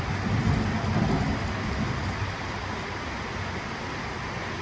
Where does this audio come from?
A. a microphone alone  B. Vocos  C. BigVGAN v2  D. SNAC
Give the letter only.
A